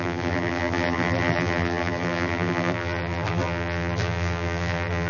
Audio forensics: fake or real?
fake